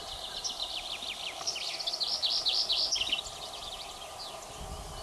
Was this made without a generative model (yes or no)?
yes